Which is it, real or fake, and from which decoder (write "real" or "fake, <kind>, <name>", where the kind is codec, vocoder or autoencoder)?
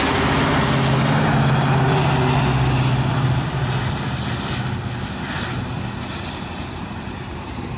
real